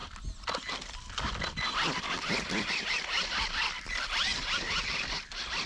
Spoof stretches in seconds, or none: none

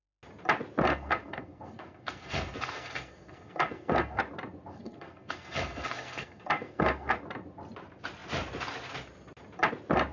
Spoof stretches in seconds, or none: 0.9-4.2 (codec, SNAC); 4.7-7.2

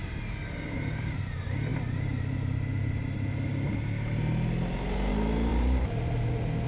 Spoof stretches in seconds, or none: 0.0-1.2 (vocoder, BigVGAN v2); 5.5-6.2

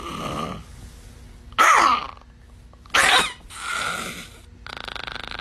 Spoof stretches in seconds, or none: none

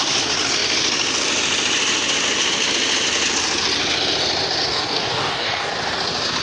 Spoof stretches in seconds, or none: 4.6-5.7 (codec, DAC)

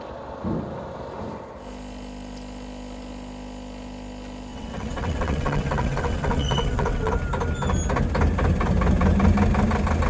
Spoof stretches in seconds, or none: 4.5-7.1 (vocoder, WaveNeXt)

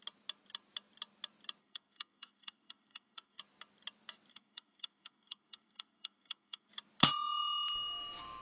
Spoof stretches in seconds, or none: 1.6-3.4 (codec, SNAC); 4.3-6.7